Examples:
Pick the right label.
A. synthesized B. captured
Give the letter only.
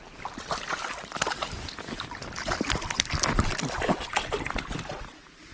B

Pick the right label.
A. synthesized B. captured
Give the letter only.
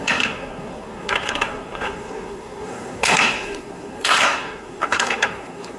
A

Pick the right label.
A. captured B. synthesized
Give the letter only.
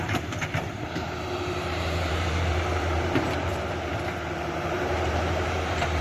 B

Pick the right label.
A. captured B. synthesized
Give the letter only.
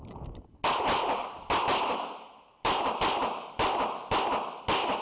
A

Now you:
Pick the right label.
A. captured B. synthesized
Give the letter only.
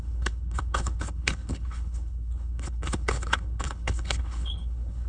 B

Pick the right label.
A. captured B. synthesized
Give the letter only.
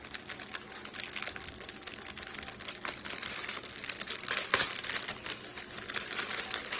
A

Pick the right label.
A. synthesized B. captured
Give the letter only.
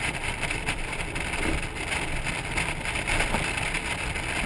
A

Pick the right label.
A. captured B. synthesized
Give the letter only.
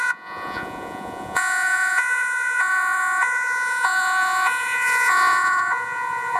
B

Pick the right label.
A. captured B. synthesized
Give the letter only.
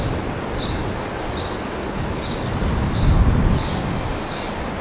A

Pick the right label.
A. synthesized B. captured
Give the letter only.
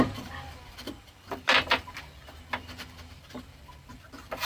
A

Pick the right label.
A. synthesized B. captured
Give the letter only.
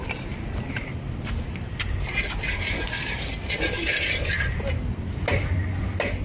B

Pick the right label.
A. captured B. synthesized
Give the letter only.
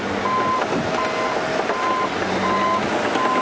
A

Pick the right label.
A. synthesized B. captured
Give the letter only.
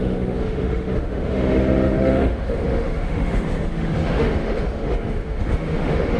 A